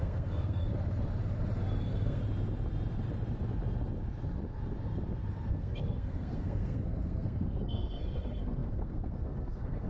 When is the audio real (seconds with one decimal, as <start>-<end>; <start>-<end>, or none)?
0.7-1.8; 2.2-5.5